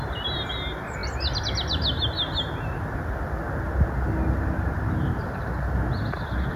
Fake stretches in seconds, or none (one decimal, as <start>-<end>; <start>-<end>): none